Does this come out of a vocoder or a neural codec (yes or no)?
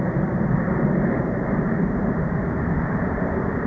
yes